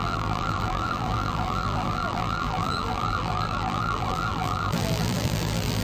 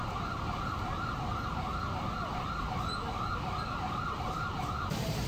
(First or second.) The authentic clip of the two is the second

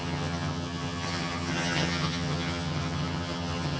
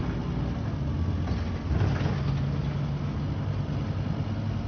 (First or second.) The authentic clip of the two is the second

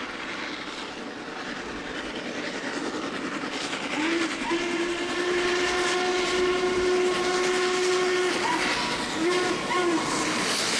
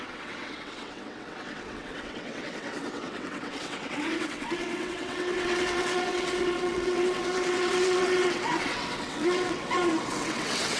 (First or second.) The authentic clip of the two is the first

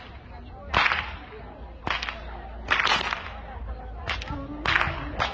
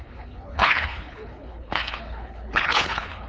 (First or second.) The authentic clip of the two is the first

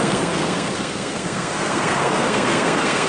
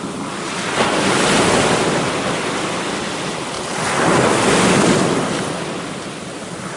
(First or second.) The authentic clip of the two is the second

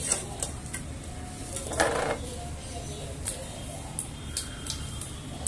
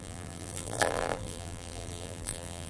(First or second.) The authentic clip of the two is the first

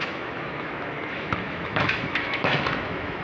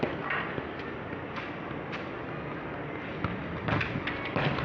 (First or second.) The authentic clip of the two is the second